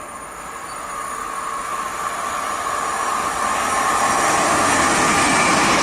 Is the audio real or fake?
real